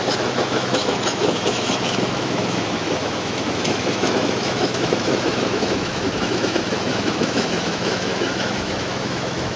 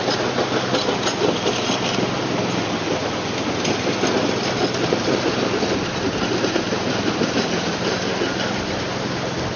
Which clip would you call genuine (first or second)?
second